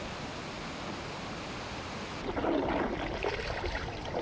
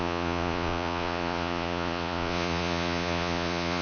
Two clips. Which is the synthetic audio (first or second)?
second